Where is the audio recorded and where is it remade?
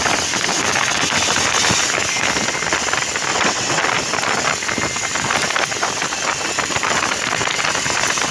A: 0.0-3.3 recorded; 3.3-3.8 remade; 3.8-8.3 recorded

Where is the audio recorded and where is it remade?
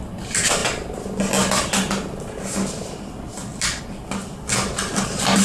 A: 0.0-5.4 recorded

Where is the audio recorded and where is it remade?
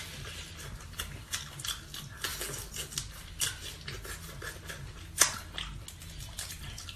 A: 0.0-7.0 recorded